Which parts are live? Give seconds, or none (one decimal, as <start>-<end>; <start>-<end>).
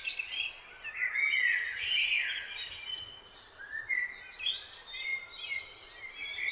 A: 0.0-6.5